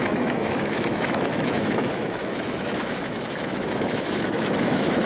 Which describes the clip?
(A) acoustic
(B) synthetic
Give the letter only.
B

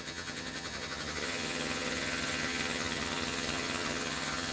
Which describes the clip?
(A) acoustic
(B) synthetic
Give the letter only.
B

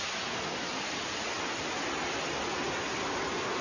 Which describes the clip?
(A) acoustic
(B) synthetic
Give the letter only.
A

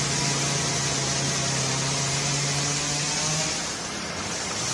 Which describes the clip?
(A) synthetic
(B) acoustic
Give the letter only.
B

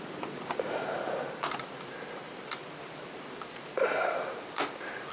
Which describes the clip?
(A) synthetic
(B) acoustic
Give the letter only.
A